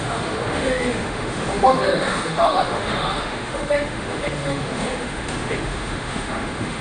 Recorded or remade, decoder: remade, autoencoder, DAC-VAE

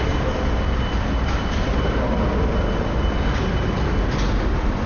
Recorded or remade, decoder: recorded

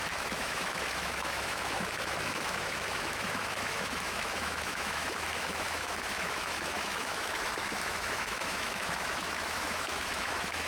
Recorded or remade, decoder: remade, autoencoder, DAC-VAE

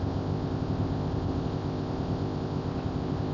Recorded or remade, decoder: remade, codec, ZipCodec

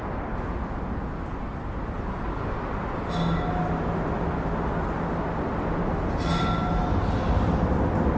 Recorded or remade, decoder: recorded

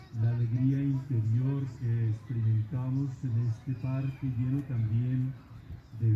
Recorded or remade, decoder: recorded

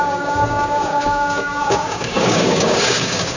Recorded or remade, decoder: remade, codec, DAC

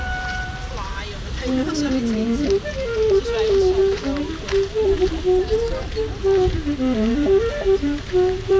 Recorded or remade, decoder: remade, vocoder, BigVGAN v2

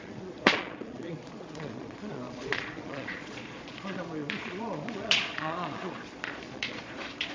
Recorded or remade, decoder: remade, vocoder, Vocos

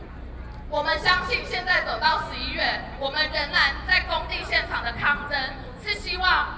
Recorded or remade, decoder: recorded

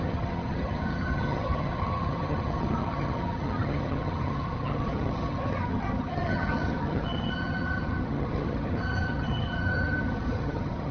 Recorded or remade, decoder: remade, vocoder, HiFi-GAN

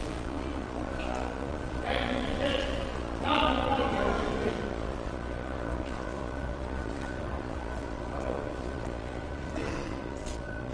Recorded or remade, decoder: remade, vocoder, Vocos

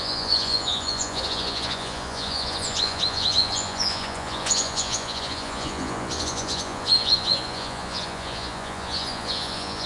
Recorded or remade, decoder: remade, vocoder, Vocos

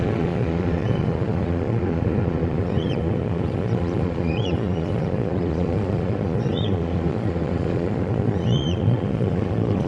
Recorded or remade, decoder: remade, vocoder, Vocos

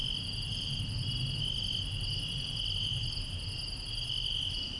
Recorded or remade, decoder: recorded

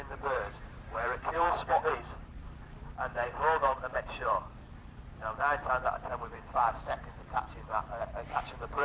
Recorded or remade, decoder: remade, vocoder, BigVGAN v2